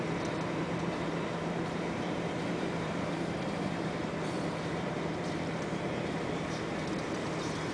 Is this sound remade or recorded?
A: remade